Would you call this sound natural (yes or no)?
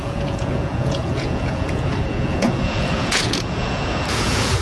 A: no